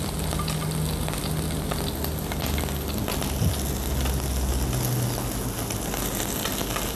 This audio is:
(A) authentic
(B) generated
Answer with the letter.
A